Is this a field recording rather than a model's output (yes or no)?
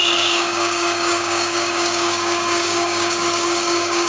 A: no